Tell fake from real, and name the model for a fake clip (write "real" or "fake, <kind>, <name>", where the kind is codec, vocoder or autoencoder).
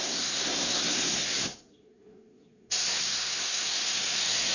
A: fake, codec, SNAC